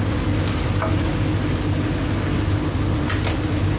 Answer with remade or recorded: recorded